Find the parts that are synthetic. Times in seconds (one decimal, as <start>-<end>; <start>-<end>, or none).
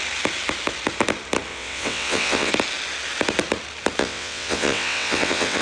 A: 1.5-2.5; 4.0-5.6